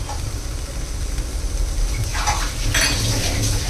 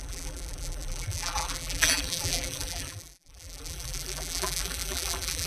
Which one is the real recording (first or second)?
first